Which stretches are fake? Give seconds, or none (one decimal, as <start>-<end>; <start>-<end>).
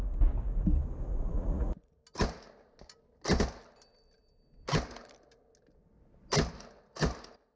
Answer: 1.1-1.9